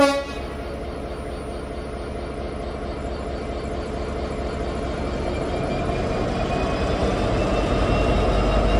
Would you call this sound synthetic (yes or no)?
no